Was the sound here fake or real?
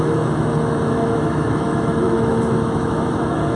fake